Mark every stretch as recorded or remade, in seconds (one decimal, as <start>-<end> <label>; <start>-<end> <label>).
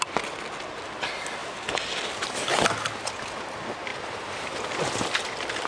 0.0-3.9 recorded; 3.9-4.8 remade; 4.8-5.7 recorded